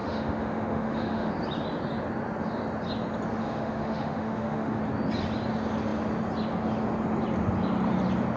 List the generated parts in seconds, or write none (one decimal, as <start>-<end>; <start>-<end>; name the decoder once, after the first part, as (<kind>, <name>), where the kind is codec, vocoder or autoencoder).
0.0-1.3 (autoencoder, DAC-VAE); 3.4-4.8